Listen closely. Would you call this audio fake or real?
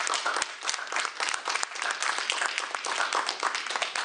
real